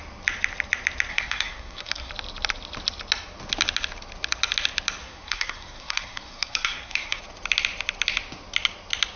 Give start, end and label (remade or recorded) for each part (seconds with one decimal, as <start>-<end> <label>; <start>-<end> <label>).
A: 0.0-1.1 recorded; 1.1-2.1 remade; 2.1-5.0 recorded; 5.0-7.2 remade; 7.2-9.2 recorded